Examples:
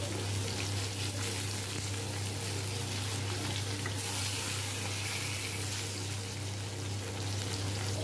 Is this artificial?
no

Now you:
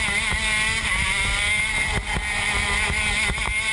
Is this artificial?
no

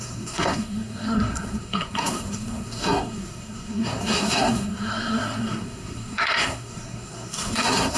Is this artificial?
yes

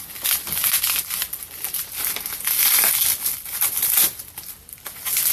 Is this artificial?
no